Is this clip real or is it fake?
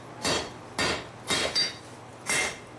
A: real